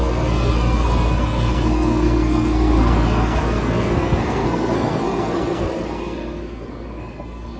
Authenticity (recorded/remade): remade